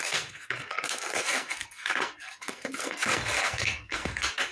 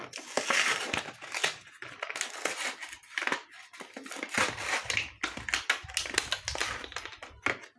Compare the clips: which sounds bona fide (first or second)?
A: second